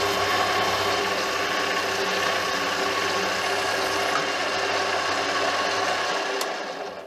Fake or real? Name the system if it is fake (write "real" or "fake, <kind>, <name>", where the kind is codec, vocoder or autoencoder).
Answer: real